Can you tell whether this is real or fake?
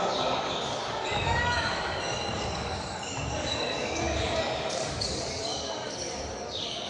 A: fake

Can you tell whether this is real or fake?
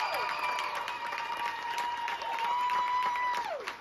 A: real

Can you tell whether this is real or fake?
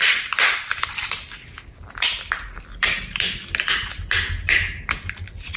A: real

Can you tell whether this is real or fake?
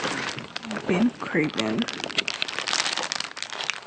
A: real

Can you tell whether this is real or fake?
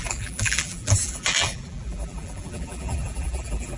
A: fake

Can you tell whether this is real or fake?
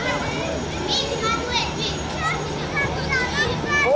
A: real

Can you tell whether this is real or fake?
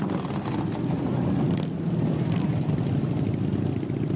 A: real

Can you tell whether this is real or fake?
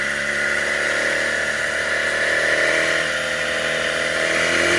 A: real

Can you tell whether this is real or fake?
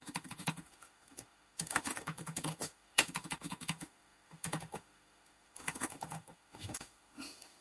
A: fake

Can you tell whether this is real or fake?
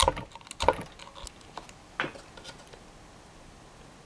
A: real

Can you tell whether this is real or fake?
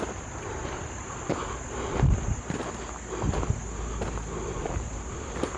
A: real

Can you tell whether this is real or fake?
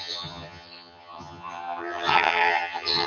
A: fake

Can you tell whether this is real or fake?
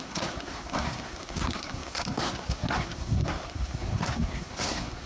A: fake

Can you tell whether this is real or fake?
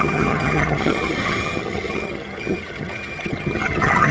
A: fake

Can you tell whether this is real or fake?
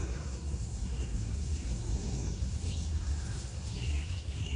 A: fake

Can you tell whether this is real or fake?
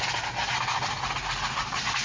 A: real